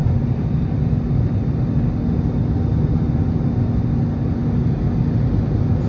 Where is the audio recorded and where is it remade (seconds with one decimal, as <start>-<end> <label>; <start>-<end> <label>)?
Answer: 0.0-0.6 remade; 0.6-5.9 recorded

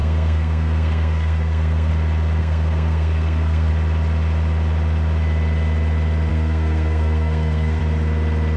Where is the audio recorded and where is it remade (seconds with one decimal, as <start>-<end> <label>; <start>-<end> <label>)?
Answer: 0.0-1.9 remade; 1.9-2.4 recorded; 2.4-3.7 remade; 3.7-6.3 recorded; 6.3-7.8 remade; 7.8-8.6 recorded

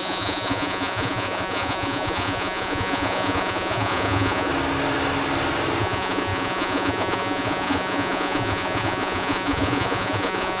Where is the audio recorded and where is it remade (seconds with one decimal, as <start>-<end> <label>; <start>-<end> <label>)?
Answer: 0.0-4.5 remade; 4.5-5.8 recorded; 5.8-10.6 remade